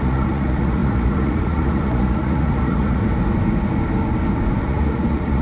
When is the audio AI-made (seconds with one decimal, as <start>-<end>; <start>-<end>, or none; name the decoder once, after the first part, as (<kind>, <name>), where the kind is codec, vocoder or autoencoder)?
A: 0.0-3.0 (vocoder, Vocos); 4.6-5.4